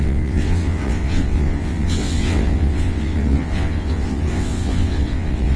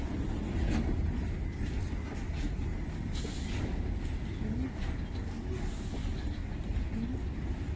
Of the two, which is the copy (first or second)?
first